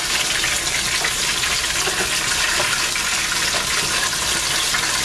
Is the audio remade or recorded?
recorded